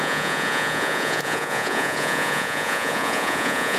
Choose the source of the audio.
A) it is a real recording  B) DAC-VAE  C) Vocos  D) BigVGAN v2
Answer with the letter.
C